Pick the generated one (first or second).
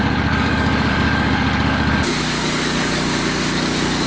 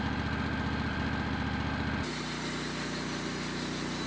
first